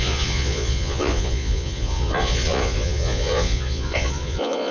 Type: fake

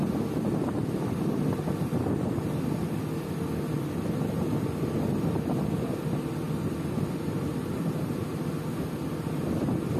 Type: real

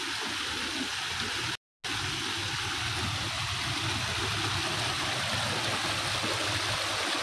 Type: real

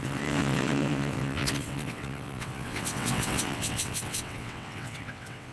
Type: fake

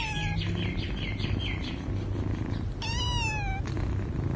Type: real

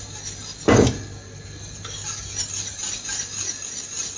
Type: real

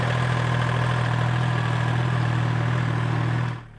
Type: real